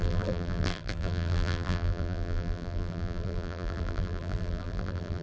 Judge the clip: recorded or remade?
remade